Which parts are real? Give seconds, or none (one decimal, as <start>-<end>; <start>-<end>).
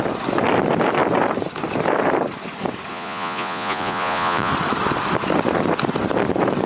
0.0-2.9; 4.5-6.7